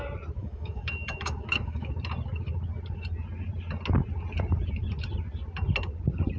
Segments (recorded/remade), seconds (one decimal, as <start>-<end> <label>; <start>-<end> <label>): 0.0-0.4 recorded; 0.4-1.9 remade; 1.9-6.4 recorded